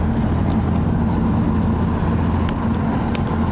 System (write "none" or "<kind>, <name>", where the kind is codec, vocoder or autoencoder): none